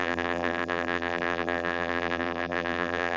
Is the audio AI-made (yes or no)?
yes